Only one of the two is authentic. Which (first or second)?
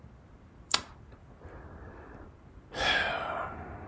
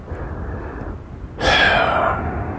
second